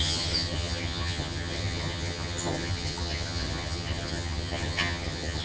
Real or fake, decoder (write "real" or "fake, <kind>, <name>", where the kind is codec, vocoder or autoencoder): fake, vocoder, HiFi-GAN